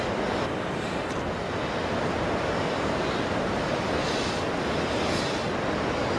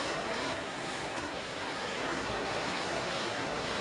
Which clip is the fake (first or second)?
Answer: second